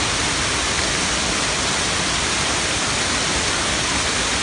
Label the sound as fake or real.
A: real